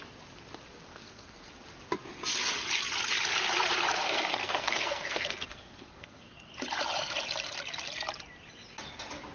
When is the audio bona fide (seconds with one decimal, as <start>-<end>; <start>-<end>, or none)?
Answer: 0.0-0.9; 1.5-4.0; 6.5-9.3